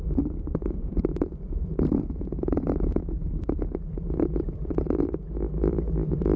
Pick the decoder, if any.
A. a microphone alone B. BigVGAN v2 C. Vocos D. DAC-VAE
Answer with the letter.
B